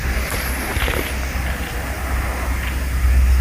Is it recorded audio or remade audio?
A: recorded